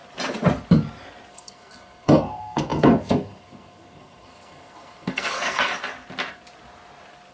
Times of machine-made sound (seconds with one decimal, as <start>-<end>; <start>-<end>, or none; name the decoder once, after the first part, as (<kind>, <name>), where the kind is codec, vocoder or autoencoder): 1.3-5.7 (codec, SNAC)